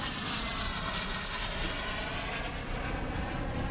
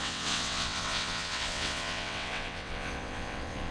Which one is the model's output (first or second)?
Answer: second